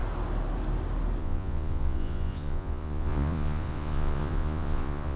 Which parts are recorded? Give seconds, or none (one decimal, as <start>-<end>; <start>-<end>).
0.0-1.2